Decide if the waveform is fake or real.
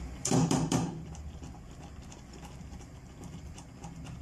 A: fake